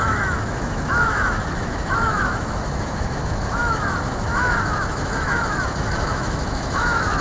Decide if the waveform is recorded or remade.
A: remade